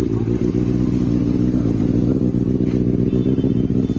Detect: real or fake real